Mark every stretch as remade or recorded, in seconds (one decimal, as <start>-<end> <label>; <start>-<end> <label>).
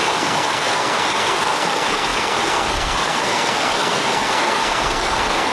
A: 0.0-5.5 remade